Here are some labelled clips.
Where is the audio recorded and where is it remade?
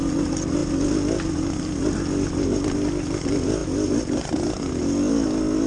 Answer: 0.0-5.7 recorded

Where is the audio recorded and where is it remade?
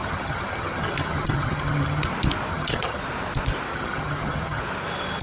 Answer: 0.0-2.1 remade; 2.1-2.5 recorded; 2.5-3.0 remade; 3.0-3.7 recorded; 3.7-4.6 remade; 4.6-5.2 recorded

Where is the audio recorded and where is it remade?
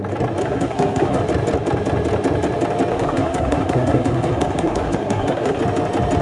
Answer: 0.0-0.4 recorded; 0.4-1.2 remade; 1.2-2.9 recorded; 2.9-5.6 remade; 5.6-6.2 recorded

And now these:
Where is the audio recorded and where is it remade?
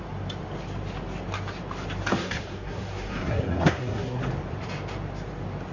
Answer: 0.0-2.1 recorded; 2.1-4.2 remade; 4.2-5.7 recorded